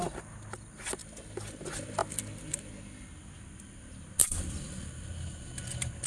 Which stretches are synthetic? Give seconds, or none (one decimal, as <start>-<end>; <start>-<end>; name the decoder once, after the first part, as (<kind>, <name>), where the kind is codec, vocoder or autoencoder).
1.0-1.6 (vocoder, BigVGAN v2); 2.0-2.7; 4.2-5.0